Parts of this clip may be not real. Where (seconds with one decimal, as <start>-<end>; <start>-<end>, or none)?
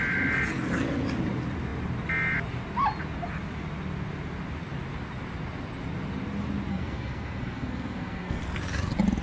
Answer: 6.7-8.4